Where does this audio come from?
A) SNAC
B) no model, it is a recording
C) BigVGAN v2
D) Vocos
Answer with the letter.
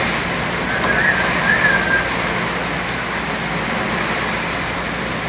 B